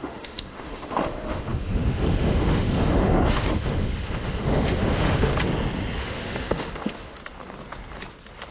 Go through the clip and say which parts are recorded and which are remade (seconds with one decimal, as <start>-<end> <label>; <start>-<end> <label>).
0.0-5.3 remade; 5.3-6.0 recorded; 6.0-7.2 remade; 7.2-8.5 recorded

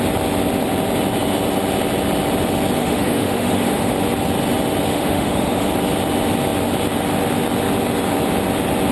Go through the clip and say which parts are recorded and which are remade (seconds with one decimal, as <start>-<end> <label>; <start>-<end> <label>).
0.0-2.8 recorded; 2.8-4.0 remade; 4.0-4.9 recorded; 4.9-5.7 remade; 5.7-8.9 recorded